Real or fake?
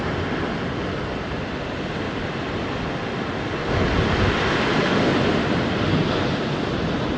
real